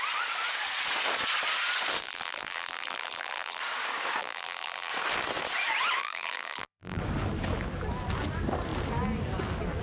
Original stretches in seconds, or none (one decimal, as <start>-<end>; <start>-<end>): 0.0-2.0; 3.6-4.2; 4.9-6.0; 7.0-9.8